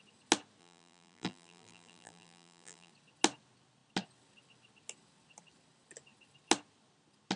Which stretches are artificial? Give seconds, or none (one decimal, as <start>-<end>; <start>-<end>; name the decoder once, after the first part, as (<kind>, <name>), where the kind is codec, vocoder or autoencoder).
0.6-2.9 (vocoder, BigVGAN v2)